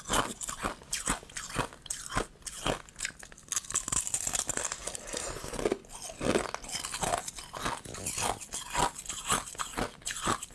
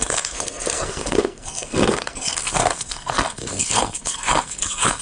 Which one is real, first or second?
first